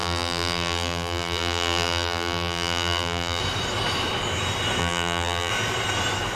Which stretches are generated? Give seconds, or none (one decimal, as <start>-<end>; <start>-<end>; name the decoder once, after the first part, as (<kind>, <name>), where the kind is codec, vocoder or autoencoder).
0.0-3.4 (vocoder, BigVGAN v2); 4.8-5.5